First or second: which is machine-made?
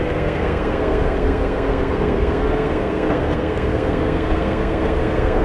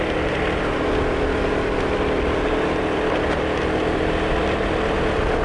first